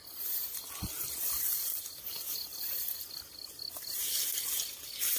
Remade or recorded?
recorded